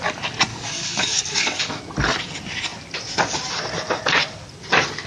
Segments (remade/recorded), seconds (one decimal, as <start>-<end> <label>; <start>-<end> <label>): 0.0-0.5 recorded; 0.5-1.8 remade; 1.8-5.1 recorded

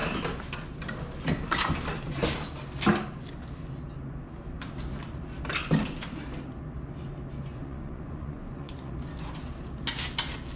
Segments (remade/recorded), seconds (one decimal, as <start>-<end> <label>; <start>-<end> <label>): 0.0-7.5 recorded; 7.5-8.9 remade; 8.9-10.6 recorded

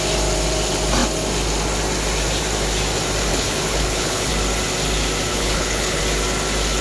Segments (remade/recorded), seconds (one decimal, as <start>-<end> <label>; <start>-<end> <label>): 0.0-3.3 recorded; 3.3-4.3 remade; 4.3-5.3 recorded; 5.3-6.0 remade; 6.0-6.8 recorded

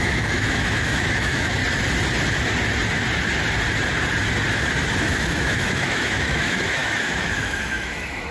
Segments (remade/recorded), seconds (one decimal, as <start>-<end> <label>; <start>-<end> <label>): 0.0-1.6 remade; 1.6-5.0 recorded; 5.0-8.3 remade

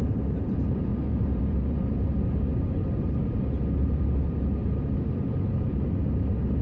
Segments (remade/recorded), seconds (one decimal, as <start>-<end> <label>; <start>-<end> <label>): 0.0-2.5 remade; 2.5-3.0 recorded; 3.0-6.6 remade

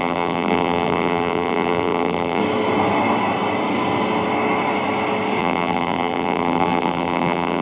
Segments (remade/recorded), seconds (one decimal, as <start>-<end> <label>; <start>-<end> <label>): 0.0-2.4 remade; 2.4-5.4 recorded; 5.4-7.6 remade